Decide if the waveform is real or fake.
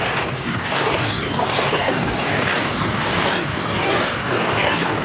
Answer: fake